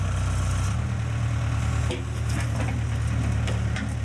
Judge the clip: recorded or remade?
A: recorded